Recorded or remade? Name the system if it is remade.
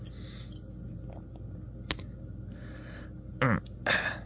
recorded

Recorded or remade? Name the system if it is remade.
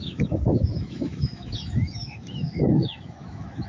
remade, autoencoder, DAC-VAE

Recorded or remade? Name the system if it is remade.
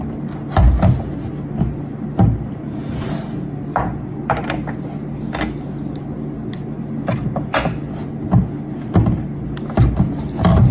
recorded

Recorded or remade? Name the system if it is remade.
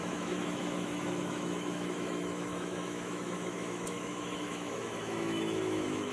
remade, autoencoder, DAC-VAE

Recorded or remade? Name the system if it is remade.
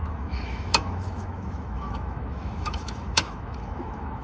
remade, autoencoder, DAC-VAE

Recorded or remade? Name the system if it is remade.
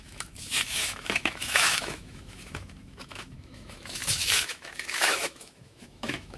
remade, autoencoder, DAC-VAE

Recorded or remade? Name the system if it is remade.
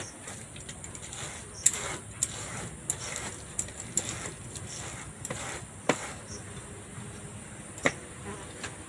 recorded